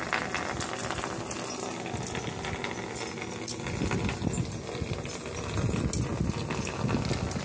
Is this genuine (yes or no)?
yes